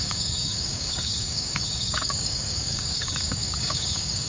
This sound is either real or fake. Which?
fake